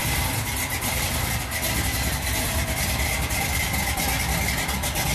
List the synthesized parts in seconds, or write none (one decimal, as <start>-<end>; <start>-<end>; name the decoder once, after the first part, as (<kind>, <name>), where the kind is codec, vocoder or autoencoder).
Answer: 0.0-5.1 (vocoder, BigVGAN v2)